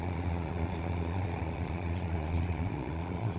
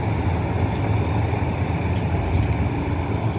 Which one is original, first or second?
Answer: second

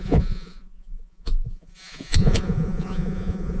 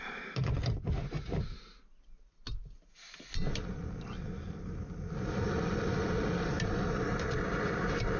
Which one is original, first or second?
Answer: second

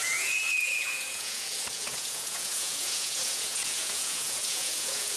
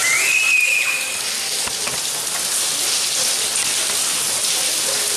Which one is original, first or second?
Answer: second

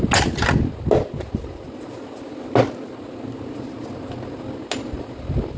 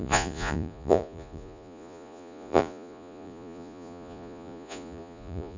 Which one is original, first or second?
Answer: first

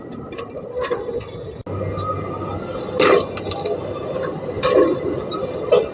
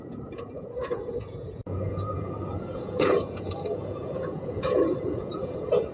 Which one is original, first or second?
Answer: first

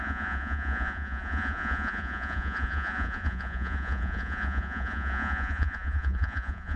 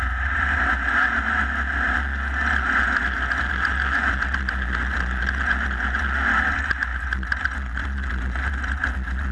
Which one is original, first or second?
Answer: second